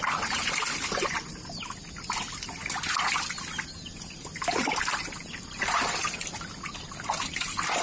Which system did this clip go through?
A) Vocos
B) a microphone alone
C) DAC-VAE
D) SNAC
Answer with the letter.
B